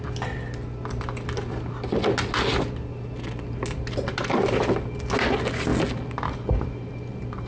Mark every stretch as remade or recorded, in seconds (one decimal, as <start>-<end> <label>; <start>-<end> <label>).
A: 0.0-7.5 recorded

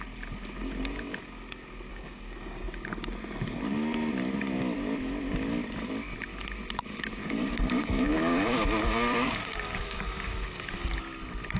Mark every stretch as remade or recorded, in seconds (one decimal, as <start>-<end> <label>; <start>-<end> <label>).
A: 0.0-1.9 recorded; 1.9-2.6 remade; 2.6-7.2 recorded; 7.2-11.0 remade; 11.0-11.6 recorded

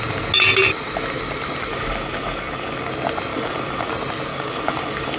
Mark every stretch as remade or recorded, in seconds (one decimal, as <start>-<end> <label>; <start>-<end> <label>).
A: 0.0-1.7 recorded; 1.7-2.9 remade; 2.9-3.3 recorded; 3.3-3.9 remade; 3.9-4.3 recorded; 4.3-5.2 remade

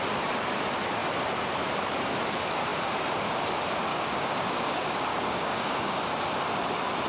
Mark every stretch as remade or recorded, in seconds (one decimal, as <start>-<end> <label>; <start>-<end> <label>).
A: 0.0-3.9 recorded; 3.9-6.0 remade; 6.0-7.1 recorded

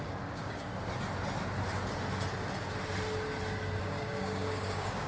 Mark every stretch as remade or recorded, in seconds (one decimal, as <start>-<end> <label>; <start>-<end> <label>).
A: 0.0-0.7 remade; 0.7-3.8 recorded; 3.8-5.1 remade

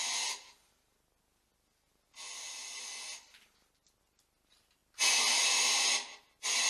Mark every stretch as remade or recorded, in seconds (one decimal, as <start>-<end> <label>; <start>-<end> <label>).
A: 0.0-6.7 recorded

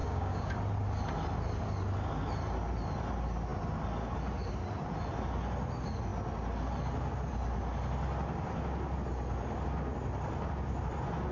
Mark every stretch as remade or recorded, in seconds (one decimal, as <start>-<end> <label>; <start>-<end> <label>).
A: 0.0-0.5 remade; 0.5-11.3 recorded